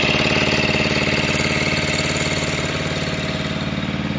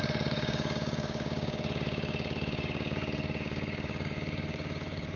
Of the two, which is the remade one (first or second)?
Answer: second